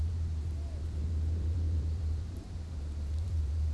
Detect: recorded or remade remade